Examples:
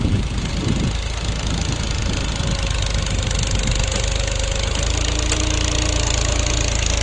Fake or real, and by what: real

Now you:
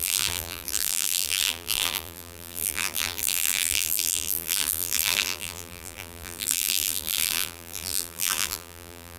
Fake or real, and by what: fake, vocoder, BigVGAN v2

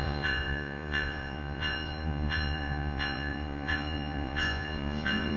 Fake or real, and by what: fake, vocoder, Vocos